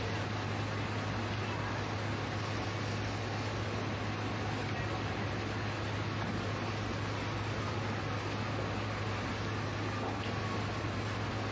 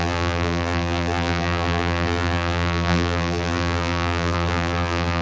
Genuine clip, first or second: first